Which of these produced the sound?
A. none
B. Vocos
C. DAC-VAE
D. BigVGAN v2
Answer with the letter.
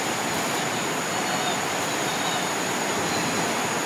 A